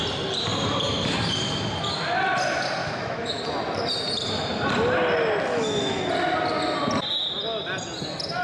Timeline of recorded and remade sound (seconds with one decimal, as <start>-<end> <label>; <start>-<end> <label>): 0.0-2.8 recorded; 2.8-3.4 remade; 3.4-5.5 recorded; 5.5-6.0 remade; 6.0-8.4 recorded